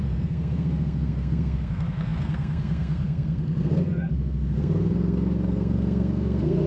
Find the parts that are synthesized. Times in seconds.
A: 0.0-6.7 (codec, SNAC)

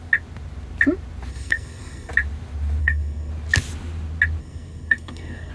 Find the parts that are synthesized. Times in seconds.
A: 1.3-2.1 (codec, SNAC); 2.8-3.3; 4.4-5.5

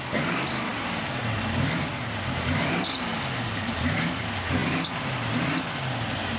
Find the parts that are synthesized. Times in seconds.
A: none

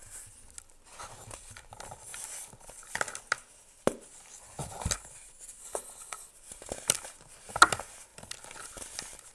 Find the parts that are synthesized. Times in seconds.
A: 5.6-6.3 (codec, HILCodec)

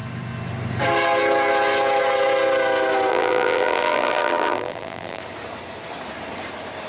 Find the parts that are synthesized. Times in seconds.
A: 3.1-5.2 (vocoder, BigVGAN v2)

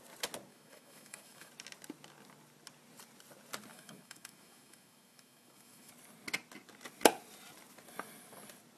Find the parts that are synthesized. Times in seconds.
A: 0.5-1.5 (autoencoder, DAC-VAE); 3.7-5.9

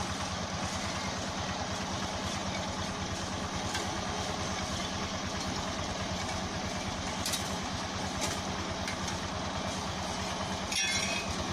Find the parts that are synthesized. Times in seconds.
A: none

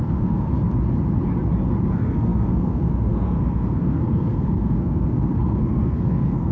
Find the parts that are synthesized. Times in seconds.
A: 0.0-0.5 (codec, SNAC); 1.8-6.5